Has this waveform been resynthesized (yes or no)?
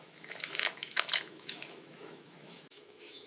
yes